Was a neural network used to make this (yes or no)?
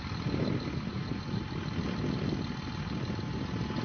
no